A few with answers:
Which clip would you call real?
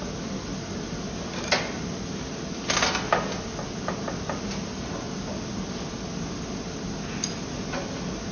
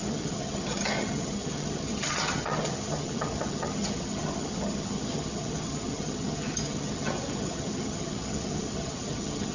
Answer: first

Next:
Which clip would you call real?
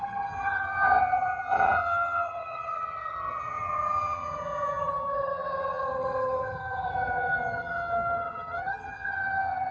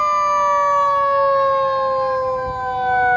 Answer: second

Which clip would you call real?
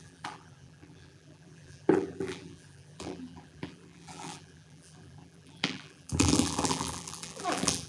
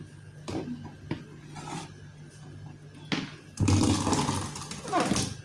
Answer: second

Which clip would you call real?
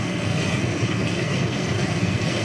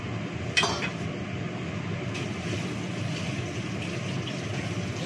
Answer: second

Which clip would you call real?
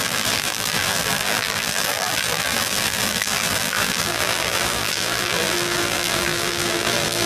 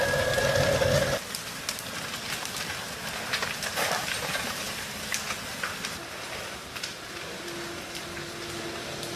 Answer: second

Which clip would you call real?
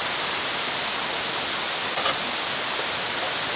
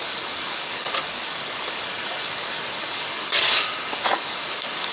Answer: first